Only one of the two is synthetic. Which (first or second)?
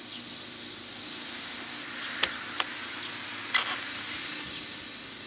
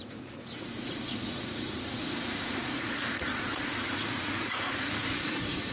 second